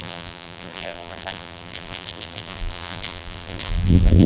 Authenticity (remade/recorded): remade